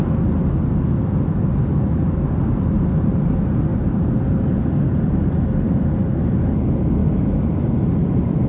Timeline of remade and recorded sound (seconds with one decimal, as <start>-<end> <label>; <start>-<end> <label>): 0.0-1.9 recorded; 1.9-3.3 remade; 3.3-3.7 recorded; 3.7-5.7 remade; 5.7-7.0 recorded; 7.0-8.5 remade